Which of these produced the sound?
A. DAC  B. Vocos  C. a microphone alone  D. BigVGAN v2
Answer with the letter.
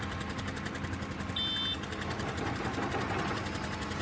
C